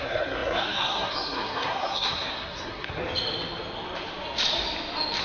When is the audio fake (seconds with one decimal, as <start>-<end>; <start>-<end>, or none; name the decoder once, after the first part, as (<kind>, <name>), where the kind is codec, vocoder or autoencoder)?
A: 0.0-3.0 (codec, SNAC)